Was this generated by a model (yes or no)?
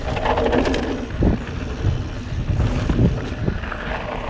no